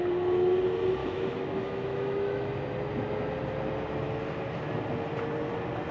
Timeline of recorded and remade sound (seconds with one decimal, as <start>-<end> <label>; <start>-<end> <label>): 0.0-1.0 recorded; 1.0-2.5 remade; 2.5-5.9 recorded